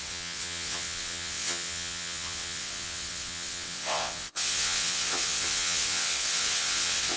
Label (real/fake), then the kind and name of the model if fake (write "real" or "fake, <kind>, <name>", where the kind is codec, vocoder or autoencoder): fake, vocoder, WaveNeXt